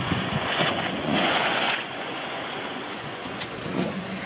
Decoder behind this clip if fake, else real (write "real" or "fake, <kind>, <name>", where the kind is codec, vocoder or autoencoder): fake, vocoder, Vocos